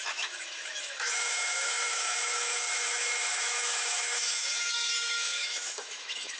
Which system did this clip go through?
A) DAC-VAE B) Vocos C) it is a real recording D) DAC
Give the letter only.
A